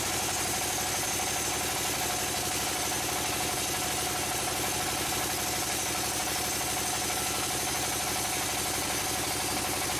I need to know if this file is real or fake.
real